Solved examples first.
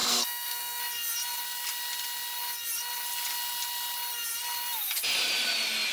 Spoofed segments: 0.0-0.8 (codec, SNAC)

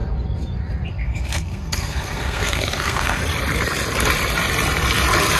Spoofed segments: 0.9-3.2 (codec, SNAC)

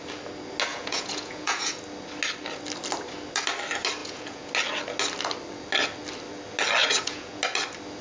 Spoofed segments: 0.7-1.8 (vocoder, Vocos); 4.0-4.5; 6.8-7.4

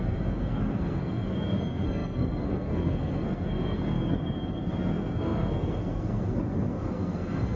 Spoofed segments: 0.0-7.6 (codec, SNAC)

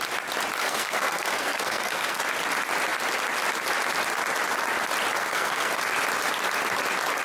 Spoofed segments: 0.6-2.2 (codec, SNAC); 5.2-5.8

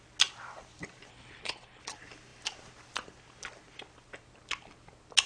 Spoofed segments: 1.1-1.8 (codec, HILCodec)

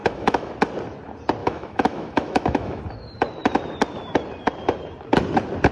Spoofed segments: 0.0-0.5 (autoencoder, DAC-VAE); 1.4-2.8